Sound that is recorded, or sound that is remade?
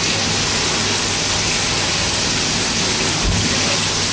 recorded